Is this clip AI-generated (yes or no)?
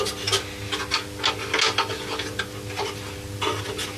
no